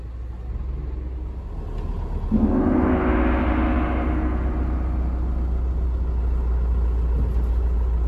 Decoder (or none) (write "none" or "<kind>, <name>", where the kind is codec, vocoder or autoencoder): none